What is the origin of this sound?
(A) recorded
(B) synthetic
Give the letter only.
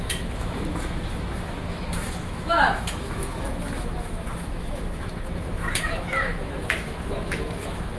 B